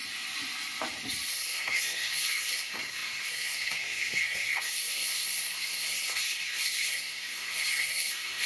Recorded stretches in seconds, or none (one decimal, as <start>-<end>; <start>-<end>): 0.0-1.3